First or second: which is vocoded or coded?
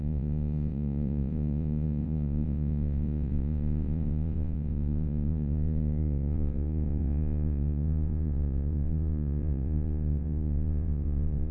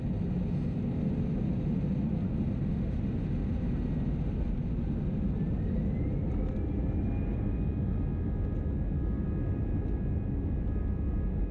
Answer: first